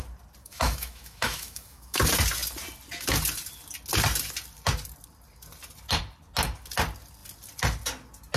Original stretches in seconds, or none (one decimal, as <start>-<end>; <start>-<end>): 0.0-0.4; 2.0-8.4